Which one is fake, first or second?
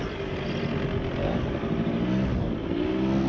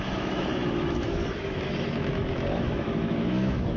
second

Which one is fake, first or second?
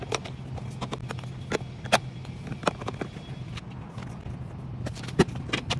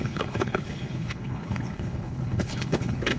second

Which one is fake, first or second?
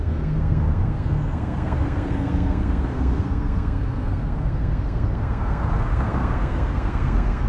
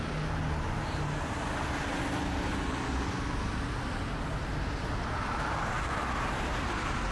first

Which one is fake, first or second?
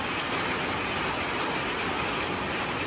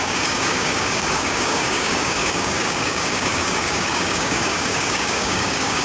second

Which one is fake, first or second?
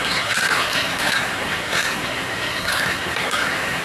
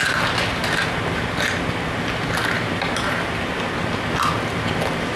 first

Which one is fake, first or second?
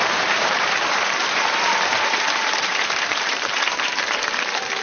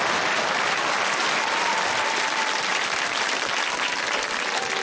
first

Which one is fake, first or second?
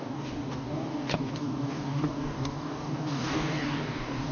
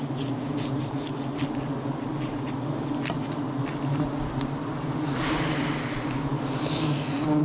first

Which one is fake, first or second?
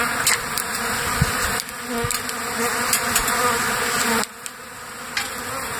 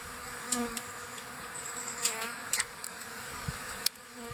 second